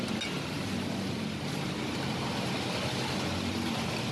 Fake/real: real